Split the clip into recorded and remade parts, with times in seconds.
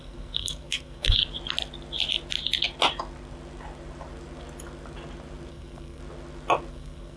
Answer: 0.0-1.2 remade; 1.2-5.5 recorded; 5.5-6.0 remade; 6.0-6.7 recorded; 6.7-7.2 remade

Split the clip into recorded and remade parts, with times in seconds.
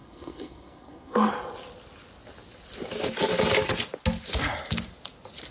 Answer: 0.0-1.3 remade; 1.3-5.5 recorded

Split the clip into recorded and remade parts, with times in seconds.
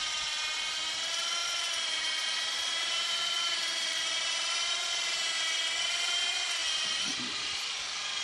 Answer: 0.0-1.4 recorded; 1.4-4.9 remade; 4.9-6.6 recorded; 6.6-7.7 remade; 7.7-8.2 recorded